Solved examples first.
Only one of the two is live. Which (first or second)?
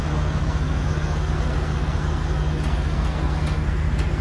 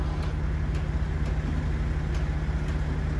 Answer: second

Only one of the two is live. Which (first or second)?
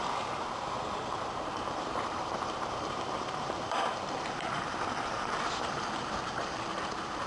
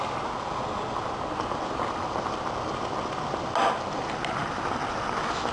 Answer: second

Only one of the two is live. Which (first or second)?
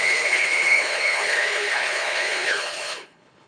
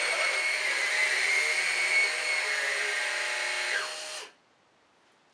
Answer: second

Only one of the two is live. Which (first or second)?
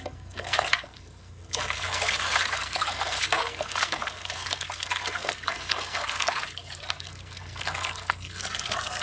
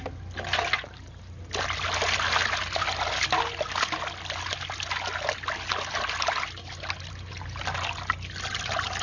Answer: second